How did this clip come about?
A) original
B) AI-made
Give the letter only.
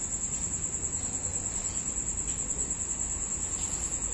A